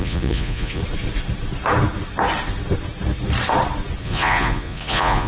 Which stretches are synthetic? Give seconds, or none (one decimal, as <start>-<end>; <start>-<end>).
0.0-0.8; 4.0-5.3